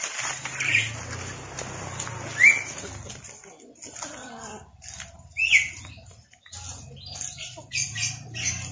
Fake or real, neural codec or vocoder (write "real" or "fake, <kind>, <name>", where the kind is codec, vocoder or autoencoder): real